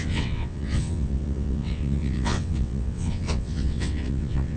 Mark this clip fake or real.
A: fake